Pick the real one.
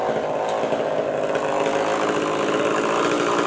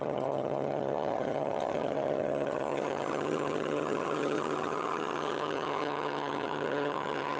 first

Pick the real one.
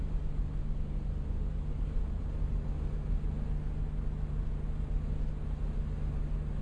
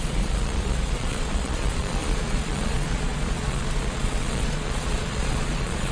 first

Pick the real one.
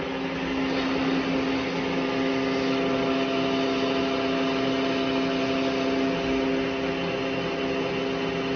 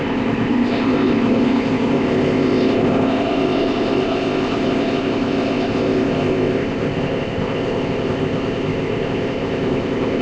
first